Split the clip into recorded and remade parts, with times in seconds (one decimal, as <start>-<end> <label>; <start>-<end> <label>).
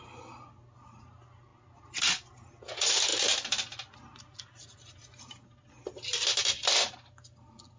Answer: 0.0-7.8 recorded